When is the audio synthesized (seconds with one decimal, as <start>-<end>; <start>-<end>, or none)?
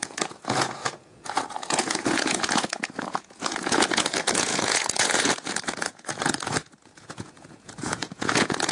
0.0-8.7